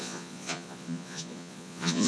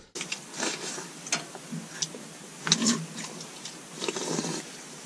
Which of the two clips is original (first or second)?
second